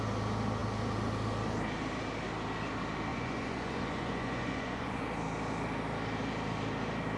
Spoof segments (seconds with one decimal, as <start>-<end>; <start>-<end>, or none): 3.1-5.0